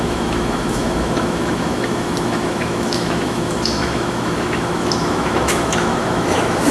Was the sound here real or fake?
fake